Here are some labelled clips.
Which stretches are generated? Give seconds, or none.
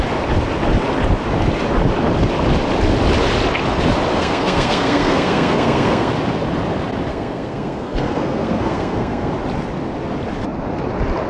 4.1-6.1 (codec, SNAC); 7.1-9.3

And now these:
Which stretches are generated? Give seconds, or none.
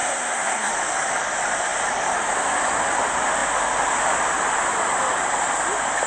0.0-0.7 (codec, SNAC)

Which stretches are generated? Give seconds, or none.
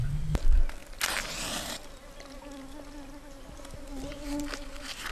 none